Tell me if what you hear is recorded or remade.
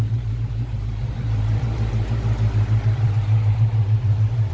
remade